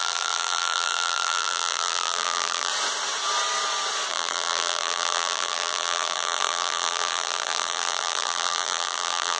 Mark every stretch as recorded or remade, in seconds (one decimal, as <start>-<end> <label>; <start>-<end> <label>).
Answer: 0.0-2.7 remade; 2.7-4.1 recorded; 4.1-9.4 remade